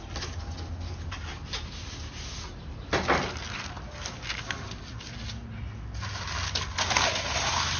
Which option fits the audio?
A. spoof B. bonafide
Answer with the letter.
B